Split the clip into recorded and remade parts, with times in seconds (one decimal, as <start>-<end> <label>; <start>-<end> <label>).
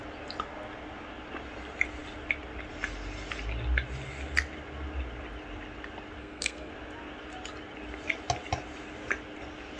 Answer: 0.0-6.2 recorded; 6.2-6.7 remade; 6.7-9.8 recorded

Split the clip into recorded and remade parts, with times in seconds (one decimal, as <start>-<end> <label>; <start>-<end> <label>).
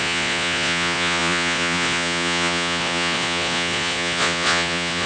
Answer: 0.0-5.1 remade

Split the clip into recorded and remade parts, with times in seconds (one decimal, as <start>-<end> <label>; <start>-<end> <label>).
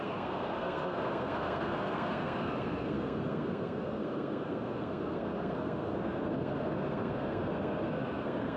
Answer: 0.0-8.6 remade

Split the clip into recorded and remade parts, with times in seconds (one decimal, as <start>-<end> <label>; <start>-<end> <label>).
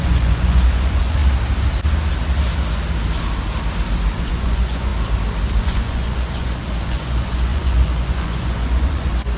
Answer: 0.0-1.2 remade; 1.2-4.2 recorded; 4.2-4.9 remade; 4.9-5.6 recorded; 5.6-9.4 remade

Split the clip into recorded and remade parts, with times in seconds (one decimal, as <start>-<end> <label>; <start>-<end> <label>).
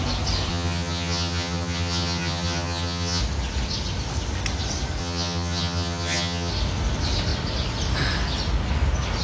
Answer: 0.0-0.5 recorded; 0.5-3.2 remade; 3.2-5.0 recorded; 5.0-6.5 remade; 6.5-9.2 recorded